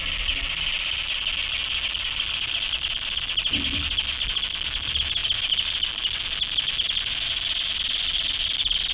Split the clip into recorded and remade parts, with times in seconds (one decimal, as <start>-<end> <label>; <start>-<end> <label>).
0.0-8.9 recorded